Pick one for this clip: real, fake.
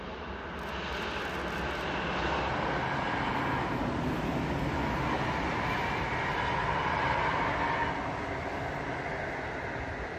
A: real